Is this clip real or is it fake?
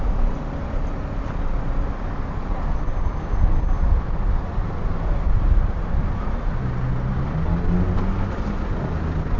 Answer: real